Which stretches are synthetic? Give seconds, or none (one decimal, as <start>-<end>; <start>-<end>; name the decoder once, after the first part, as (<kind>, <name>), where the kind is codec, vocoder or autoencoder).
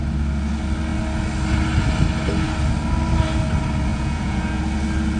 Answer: 3.9-4.6 (vocoder, Vocos)